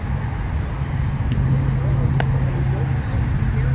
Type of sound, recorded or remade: recorded